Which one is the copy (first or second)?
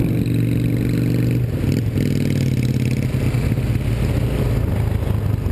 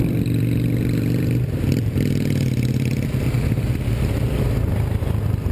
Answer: second